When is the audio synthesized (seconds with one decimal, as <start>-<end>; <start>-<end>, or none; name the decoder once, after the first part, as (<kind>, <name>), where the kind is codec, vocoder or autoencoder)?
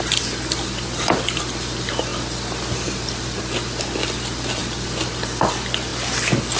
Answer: none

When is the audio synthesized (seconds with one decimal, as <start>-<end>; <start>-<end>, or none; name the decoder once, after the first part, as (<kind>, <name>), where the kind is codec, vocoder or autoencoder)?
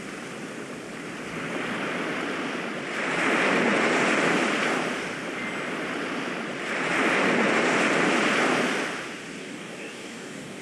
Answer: 9.4-10.6 (codec, DAC)